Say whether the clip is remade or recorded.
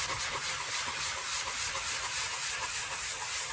recorded